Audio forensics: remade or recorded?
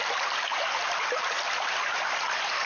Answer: recorded